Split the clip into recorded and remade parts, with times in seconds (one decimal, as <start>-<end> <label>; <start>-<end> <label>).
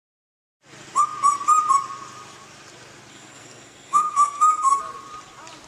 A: 0.0-3.1 recorded; 3.1-4.8 remade; 4.8-5.7 recorded